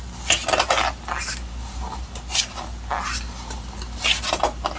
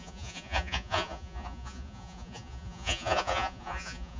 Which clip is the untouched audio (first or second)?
first